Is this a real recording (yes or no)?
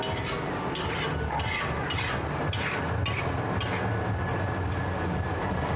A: yes